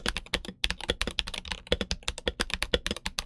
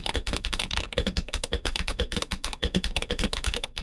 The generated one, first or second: second